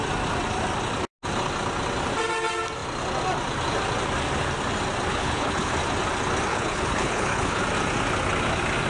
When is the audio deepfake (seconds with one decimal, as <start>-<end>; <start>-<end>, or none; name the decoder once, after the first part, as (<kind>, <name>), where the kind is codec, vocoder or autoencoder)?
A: 5.1-5.7 (codec, HILCodec); 6.5-7.6